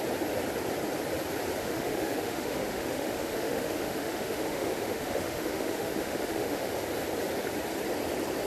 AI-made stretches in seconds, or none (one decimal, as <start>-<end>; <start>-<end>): 1.6-6.7